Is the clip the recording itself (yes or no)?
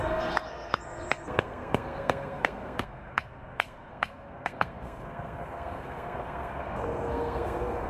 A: no